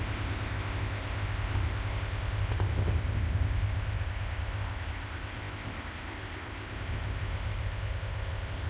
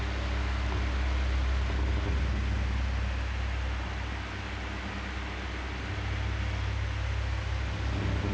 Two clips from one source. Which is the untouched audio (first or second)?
second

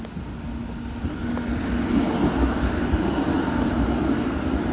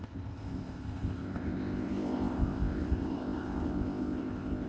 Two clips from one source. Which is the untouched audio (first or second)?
first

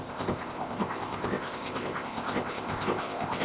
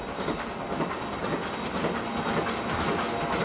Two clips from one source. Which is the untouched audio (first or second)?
second